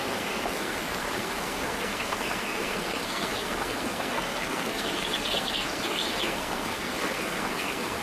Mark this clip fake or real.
fake